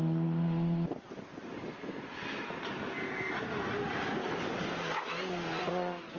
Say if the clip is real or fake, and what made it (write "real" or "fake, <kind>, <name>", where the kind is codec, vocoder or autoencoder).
real